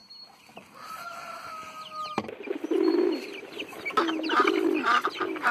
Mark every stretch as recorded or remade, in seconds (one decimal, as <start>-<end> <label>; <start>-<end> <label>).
0.0-5.5 recorded